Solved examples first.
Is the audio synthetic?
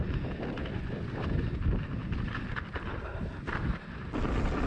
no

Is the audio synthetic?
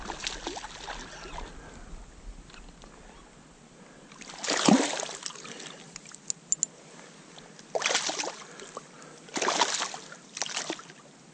no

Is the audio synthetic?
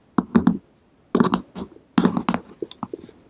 no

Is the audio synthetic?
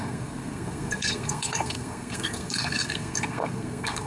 yes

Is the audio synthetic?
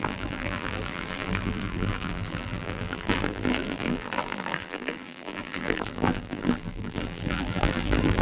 yes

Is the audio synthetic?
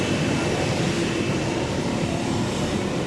no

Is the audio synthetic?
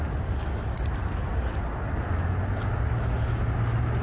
no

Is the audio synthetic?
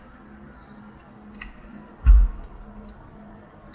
no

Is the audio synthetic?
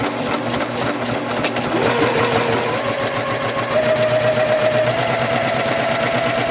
no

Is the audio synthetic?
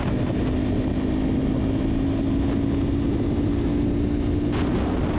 no